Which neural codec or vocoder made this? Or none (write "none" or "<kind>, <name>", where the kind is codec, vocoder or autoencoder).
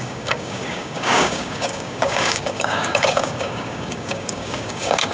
codec, DAC